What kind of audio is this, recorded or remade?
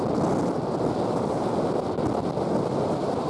recorded